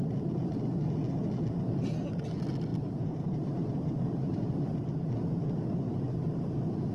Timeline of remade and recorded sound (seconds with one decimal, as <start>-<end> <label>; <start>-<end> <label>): 0.0-2.7 recorded; 2.7-4.5 remade; 4.5-6.9 recorded